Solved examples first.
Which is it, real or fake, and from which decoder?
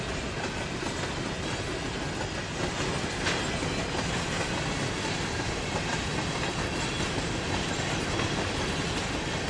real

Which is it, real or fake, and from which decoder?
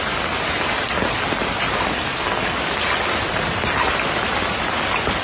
real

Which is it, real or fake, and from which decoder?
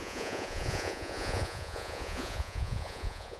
fake, vocoder, Vocos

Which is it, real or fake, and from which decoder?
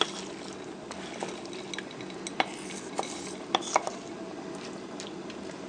real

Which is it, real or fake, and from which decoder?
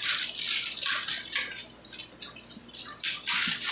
real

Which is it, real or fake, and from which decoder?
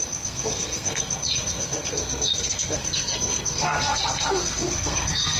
fake, codec, SNAC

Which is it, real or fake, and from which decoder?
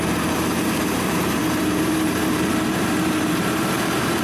fake, vocoder, BigVGAN v2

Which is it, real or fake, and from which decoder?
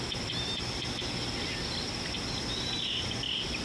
real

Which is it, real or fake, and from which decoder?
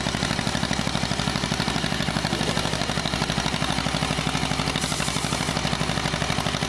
real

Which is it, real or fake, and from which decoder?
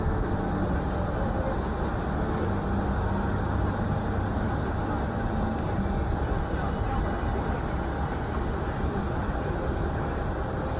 real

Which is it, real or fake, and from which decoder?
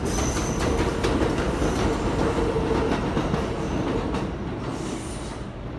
real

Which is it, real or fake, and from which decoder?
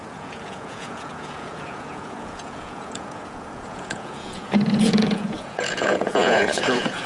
fake, vocoder, Vocos